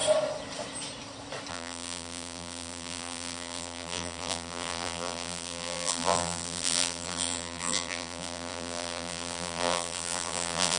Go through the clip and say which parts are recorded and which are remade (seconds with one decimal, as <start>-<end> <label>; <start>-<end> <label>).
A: 0.0-1.5 recorded; 1.5-10.8 remade